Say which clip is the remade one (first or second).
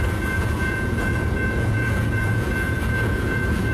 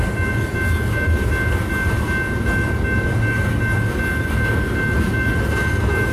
first